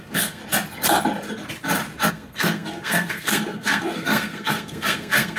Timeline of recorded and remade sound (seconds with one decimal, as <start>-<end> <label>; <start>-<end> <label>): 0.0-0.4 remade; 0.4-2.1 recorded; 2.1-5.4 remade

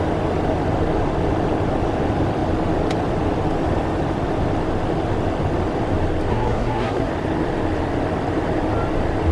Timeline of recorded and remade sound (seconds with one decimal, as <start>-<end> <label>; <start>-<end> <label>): 0.0-6.3 recorded; 6.3-7.1 remade; 7.1-9.3 recorded

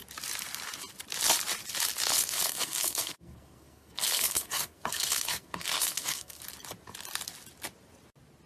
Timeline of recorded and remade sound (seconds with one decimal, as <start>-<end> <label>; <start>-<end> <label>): 0.0-2.1 recorded; 2.1-6.4 remade; 6.4-8.5 recorded

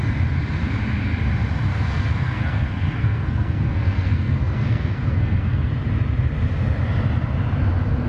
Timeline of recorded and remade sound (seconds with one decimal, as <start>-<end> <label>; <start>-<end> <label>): 0.0-1.7 recorded; 1.7-5.7 remade; 5.7-8.1 recorded

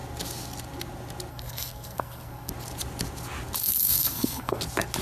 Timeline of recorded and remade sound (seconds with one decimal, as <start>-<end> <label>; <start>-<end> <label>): 0.0-1.3 recorded; 1.3-2.5 remade; 2.5-3.6 recorded; 3.6-4.6 remade; 4.6-5.0 recorded

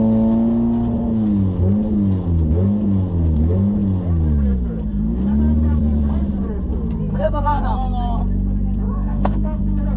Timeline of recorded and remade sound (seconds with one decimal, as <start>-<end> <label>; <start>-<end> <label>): 0.0-7.1 recorded; 7.1-7.6 remade; 7.6-8.9 recorded; 8.9-9.6 remade; 9.6-10.0 recorded

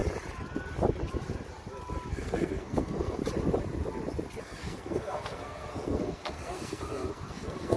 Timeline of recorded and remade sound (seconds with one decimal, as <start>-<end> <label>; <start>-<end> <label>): 0.0-2.1 recorded; 2.1-3.2 remade; 3.2-4.4 recorded; 4.4-7.8 remade

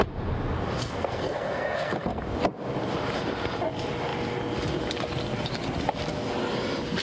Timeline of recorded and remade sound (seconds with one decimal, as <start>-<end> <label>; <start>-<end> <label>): 0.0-0.8 recorded; 0.8-2.2 remade; 2.2-7.0 recorded